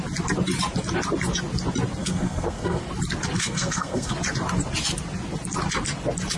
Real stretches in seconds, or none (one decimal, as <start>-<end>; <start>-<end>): 0.0-2.0; 2.8-3.4; 4.1-6.4